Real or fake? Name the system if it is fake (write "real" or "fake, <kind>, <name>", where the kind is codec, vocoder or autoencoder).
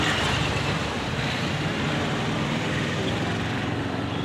real